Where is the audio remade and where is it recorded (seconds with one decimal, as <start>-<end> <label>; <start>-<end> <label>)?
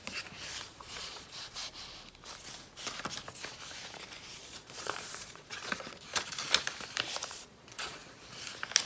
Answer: 0.0-0.6 recorded; 0.6-1.6 remade; 1.6-4.3 recorded; 4.3-6.1 remade; 6.1-7.3 recorded; 7.3-8.0 remade; 8.0-8.9 recorded